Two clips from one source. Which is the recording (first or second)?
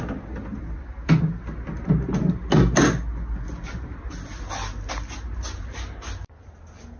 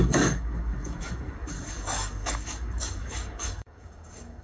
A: first